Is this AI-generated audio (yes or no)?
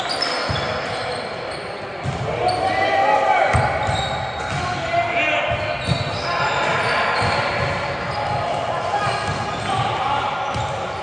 no